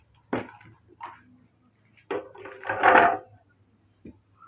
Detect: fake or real real